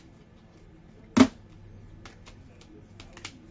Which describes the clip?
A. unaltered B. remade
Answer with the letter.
A